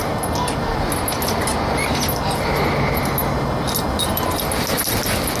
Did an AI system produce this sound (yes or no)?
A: no